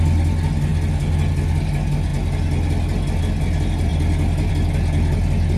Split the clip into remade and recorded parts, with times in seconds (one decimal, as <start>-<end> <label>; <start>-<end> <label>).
0.0-5.6 recorded